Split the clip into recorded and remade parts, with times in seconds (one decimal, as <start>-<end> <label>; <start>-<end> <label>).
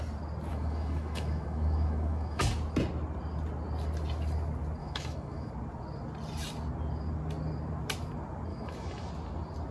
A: 0.0-0.5 recorded; 0.5-2.4 remade; 2.4-4.8 recorded; 4.8-5.5 remade; 5.5-8.5 recorded; 8.5-9.1 remade; 9.1-9.7 recorded